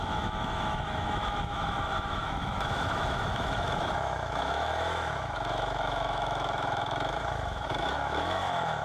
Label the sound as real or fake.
fake